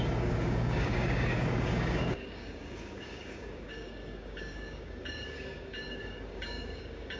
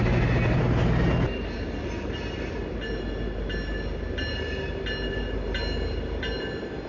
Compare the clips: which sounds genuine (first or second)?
second